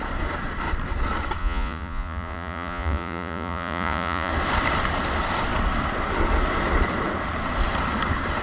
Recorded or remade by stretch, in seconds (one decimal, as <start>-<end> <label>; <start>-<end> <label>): 0.0-1.4 recorded; 1.4-4.3 remade; 4.3-8.4 recorded